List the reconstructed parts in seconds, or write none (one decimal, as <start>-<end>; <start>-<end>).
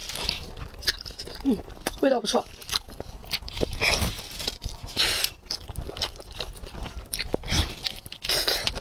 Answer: 0.0-0.8